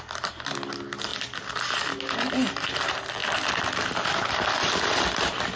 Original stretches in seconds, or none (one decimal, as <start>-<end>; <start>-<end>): 0.0-5.6

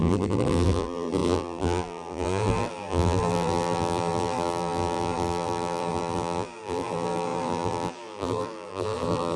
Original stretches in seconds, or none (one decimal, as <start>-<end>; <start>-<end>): none

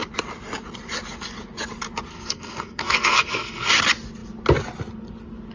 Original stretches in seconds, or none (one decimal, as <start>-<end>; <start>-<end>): 0.0-2.1; 3.7-5.5

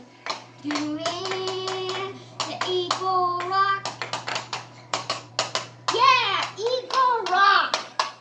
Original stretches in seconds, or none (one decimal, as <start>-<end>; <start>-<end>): 0.0-0.6; 1.2-4.3; 5.3-8.2

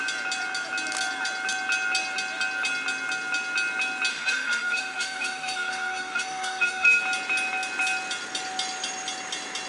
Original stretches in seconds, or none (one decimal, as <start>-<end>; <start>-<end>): 0.0-4.1; 7.0-9.7